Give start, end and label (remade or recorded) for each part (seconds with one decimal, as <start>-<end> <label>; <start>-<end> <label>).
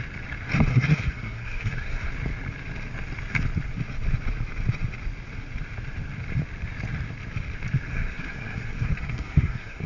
0.0-0.7 recorded; 0.7-2.1 remade; 2.1-7.9 recorded; 7.9-9.9 remade